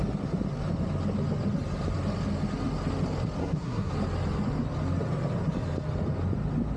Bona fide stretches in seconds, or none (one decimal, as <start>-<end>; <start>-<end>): 0.0-3.4; 3.9-6.8